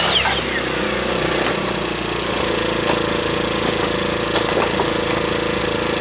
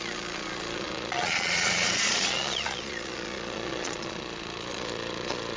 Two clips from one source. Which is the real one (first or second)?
first